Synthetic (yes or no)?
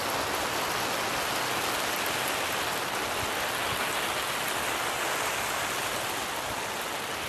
no